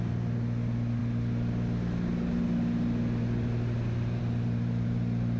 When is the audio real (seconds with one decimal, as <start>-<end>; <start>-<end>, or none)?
0.0-5.4